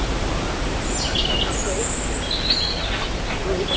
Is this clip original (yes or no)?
yes